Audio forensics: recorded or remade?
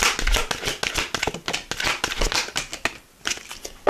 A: recorded